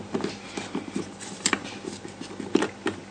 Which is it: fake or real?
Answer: real